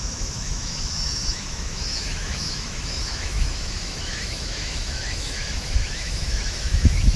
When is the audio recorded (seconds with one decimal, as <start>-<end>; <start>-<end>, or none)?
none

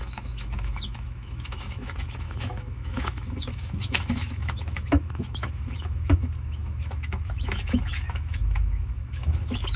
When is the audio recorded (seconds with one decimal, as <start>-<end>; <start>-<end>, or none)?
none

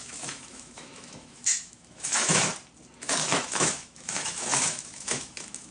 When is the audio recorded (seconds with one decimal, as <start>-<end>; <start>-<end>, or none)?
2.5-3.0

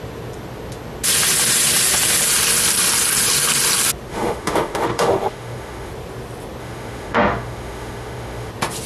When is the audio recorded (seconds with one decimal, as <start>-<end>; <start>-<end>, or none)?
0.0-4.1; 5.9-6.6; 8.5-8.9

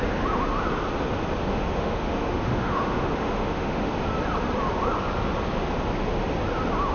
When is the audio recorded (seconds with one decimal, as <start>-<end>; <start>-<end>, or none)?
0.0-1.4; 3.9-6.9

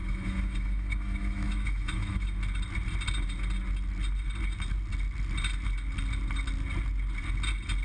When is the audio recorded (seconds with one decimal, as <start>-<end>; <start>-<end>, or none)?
2.4-7.8

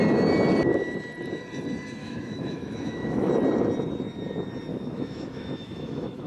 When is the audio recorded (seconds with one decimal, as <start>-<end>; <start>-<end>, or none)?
0.0-2.0; 3.3-4.7

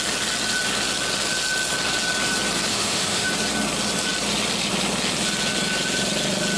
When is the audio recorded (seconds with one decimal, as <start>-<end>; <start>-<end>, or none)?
0.0-2.7; 3.3-6.6